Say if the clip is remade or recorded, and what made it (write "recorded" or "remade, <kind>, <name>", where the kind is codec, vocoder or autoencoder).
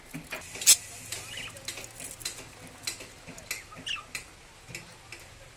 recorded